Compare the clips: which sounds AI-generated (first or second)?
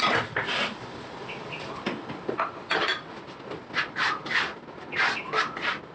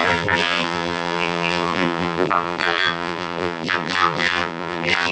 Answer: second